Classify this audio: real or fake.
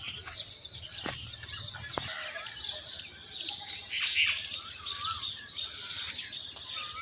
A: real